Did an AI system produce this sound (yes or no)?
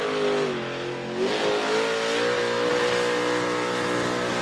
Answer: no